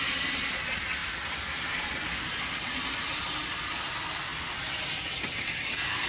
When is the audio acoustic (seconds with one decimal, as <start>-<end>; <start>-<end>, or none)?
0.0-6.1

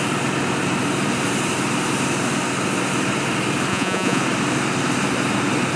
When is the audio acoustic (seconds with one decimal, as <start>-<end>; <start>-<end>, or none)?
0.0-3.7; 4.2-5.8

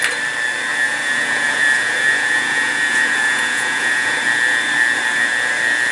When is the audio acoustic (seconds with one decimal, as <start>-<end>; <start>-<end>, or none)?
0.0-0.7; 4.2-5.9